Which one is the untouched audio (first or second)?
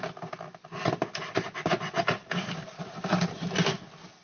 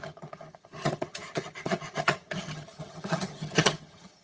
first